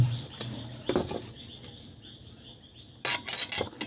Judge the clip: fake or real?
real